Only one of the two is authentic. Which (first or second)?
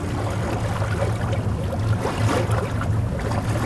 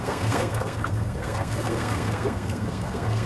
first